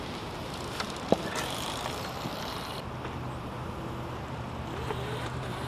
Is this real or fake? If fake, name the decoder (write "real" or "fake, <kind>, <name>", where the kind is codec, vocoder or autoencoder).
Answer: fake, vocoder, BigVGAN v2